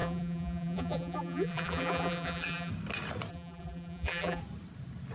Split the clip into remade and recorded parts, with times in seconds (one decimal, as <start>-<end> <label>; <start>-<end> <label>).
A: 0.0-2.7 remade; 2.7-3.3 recorded; 3.3-4.4 remade; 4.4-5.1 recorded